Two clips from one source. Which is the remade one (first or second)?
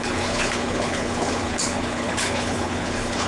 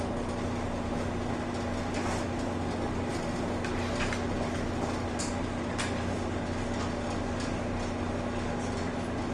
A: first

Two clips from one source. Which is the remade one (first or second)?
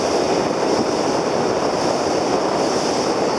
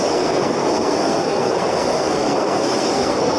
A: second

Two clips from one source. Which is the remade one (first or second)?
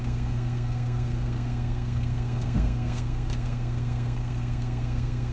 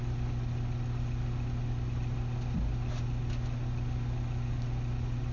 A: first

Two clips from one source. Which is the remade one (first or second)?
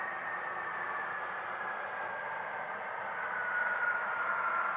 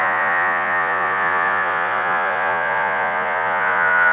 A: second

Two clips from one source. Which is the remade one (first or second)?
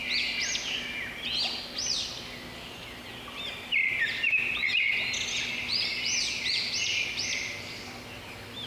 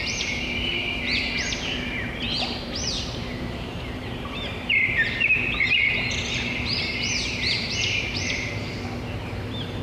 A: second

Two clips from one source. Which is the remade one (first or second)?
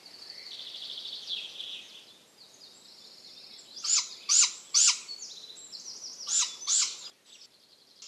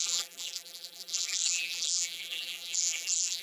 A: second